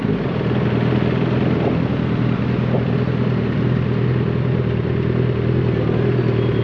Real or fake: real